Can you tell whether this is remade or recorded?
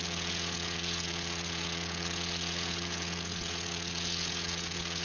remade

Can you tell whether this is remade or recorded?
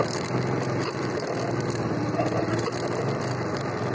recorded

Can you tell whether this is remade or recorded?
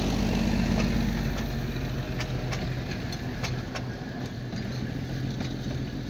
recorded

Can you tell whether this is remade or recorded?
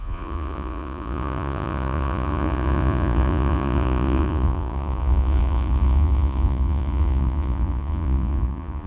remade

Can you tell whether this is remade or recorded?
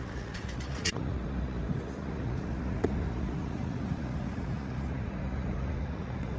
remade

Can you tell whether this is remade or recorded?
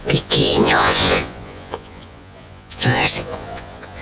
remade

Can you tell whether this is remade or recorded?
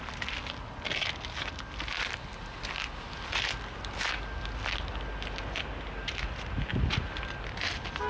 recorded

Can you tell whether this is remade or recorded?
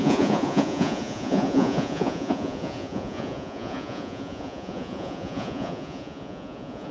remade